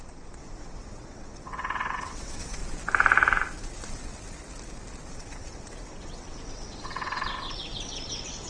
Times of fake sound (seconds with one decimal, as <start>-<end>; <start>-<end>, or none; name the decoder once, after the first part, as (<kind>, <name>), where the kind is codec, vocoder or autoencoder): 0.0-2.6 (vocoder, WaveNeXt); 5.1-8.5